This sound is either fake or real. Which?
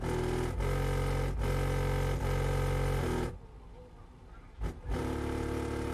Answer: real